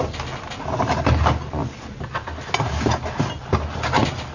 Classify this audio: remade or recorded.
recorded